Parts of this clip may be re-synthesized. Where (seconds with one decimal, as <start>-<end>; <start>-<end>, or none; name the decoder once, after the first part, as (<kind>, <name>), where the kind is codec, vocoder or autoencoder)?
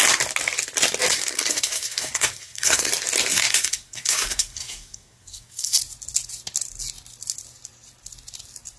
1.1-2.9 (codec, SNAC); 3.3-5.8